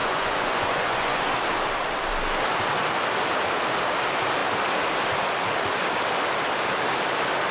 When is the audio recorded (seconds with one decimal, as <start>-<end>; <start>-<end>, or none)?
1.2-7.5